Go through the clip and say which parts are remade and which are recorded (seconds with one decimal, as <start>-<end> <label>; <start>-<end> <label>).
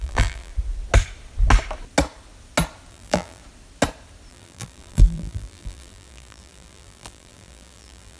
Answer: 0.0-0.5 remade; 0.5-2.9 recorded; 2.9-3.4 remade; 3.4-4.3 recorded; 4.3-8.2 remade